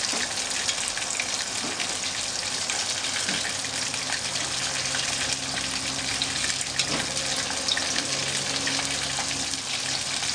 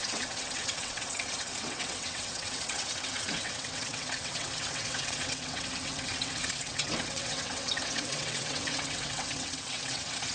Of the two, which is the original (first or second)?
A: first